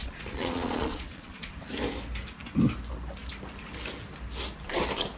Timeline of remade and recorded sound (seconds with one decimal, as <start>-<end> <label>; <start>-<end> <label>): 0.0-1.5 remade; 1.5-5.2 recorded